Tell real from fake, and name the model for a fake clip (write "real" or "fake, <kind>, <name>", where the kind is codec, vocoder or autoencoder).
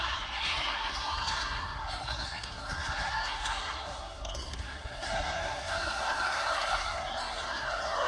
fake, codec, SNAC